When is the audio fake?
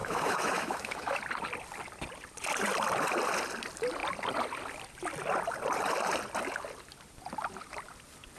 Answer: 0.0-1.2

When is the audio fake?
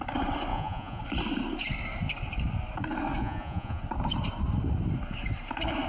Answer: 0.5-1.0; 3.2-3.8